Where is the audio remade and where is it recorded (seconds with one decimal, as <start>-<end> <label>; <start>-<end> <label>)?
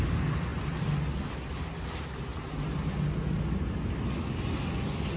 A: 0.0-2.3 recorded; 2.3-2.9 remade; 2.9-5.2 recorded